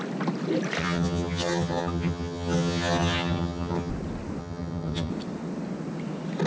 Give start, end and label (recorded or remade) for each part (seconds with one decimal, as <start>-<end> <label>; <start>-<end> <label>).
0.0-0.8 recorded; 0.8-3.9 remade; 3.9-4.4 recorded; 4.4-5.1 remade; 5.1-6.5 recorded